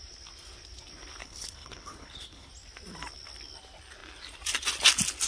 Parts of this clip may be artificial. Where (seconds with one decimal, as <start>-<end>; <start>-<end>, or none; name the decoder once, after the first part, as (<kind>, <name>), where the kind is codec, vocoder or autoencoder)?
1.2-2.5 (codec, HILCodec)